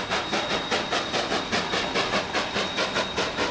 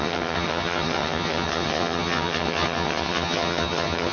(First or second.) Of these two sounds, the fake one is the second